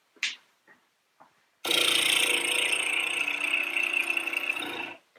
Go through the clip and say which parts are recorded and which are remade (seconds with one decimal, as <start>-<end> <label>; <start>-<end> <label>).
0.0-0.5 remade; 0.5-3.6 recorded; 3.6-4.0 remade; 4.0-4.5 recorded; 4.5-5.2 remade